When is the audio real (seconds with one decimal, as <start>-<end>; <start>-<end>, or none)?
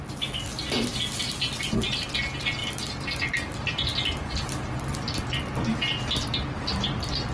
0.0-7.3